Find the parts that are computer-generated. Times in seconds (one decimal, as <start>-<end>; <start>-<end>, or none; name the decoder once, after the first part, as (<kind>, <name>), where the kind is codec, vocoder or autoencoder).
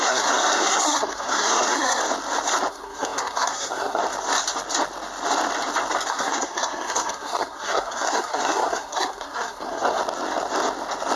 0.0-2.0 (codec, SNAC); 2.7-4.0; 6.1-10.0